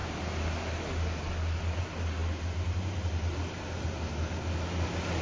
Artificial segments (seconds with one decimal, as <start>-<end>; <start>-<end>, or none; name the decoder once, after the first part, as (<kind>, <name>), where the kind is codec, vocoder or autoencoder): none